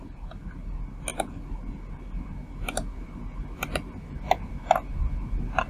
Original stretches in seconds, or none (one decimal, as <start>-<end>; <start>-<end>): 0.0-5.7